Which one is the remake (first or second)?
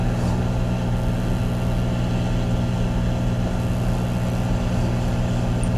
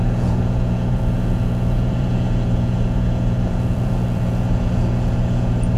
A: second